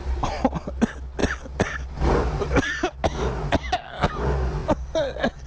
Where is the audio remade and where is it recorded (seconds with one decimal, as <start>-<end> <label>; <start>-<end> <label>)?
0.0-5.5 recorded